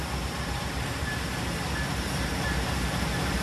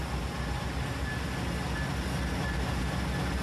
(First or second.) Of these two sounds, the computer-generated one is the first